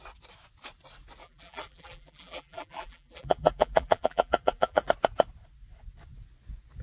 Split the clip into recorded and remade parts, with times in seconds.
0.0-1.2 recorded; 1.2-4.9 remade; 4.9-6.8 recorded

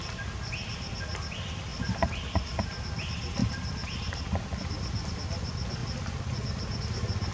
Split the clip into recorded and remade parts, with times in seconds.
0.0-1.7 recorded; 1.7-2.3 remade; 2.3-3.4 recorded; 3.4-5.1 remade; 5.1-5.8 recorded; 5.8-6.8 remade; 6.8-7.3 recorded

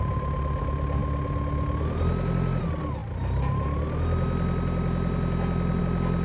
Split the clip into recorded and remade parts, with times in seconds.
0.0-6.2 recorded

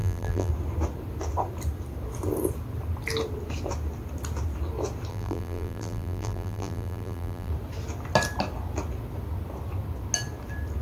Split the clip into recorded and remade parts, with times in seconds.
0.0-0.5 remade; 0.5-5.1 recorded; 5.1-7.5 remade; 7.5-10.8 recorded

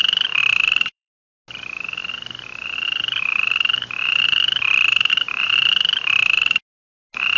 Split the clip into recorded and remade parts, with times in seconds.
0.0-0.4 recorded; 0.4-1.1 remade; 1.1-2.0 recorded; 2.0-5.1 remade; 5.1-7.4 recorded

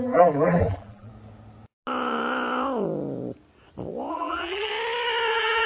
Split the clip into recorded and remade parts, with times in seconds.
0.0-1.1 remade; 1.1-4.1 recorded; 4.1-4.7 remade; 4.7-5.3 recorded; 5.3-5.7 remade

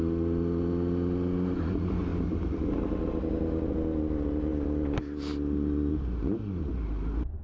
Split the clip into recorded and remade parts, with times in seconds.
0.0-7.4 recorded

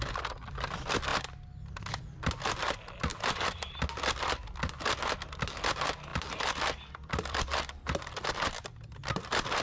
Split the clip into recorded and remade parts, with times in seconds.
0.0-6.1 recorded; 6.1-8.3 remade; 8.3-9.6 recorded